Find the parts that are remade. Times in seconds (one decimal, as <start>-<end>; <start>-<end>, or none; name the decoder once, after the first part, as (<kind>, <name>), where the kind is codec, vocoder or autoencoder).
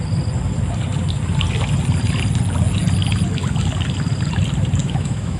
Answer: 4.8-5.4 (autoencoder, DAC-VAE)